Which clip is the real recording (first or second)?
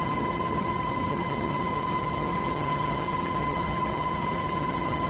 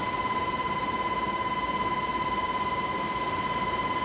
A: second